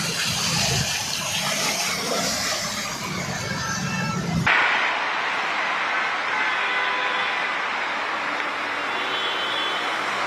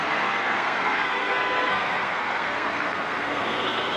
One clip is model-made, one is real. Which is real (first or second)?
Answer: first